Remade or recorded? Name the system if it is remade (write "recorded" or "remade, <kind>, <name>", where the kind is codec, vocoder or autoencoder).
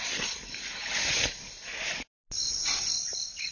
recorded